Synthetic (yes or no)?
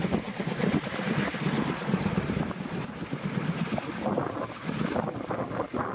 no